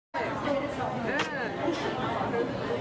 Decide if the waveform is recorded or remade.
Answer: recorded